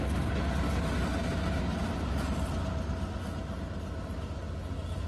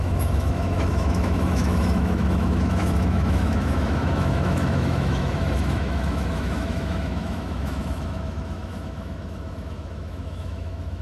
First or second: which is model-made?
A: second